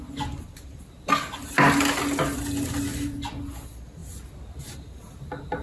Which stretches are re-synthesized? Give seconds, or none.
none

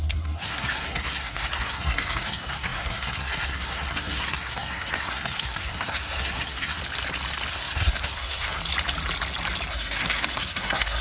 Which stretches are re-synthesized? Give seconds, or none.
0.0-6.8; 7.5-8.6; 9.7-11.0

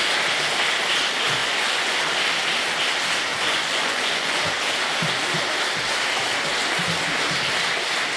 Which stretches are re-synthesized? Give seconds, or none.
1.4-2.0; 3.3-4.4